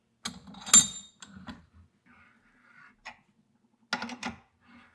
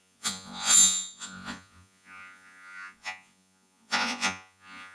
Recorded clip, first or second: first